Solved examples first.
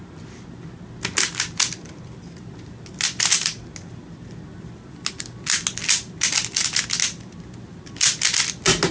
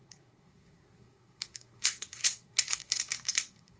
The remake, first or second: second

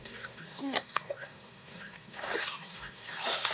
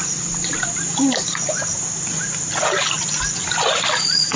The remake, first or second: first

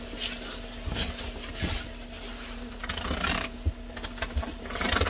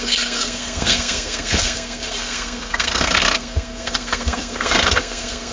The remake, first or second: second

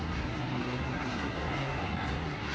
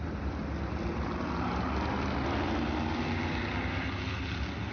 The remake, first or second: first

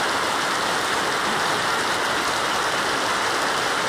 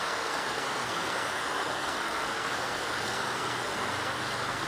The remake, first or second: second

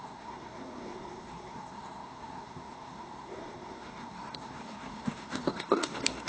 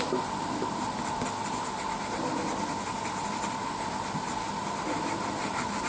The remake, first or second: first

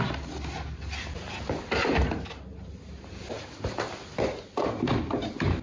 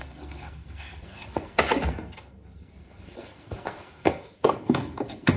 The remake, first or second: second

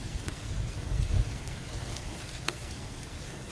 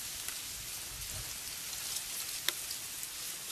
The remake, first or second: first